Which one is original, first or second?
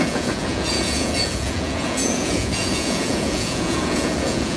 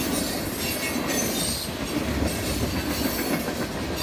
second